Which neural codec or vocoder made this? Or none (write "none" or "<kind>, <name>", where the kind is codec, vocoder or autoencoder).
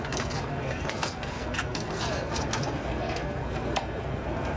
codec, SNAC